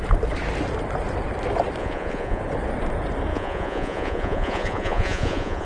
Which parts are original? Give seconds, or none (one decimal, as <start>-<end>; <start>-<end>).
0.0-1.8; 2.4-3.3